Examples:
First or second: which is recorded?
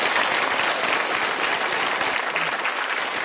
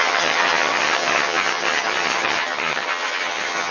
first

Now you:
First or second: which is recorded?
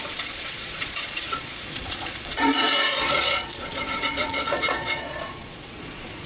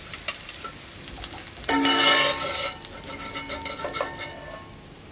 second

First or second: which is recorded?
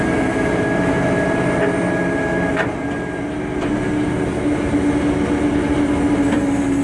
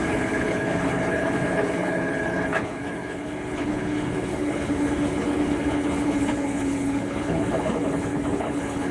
first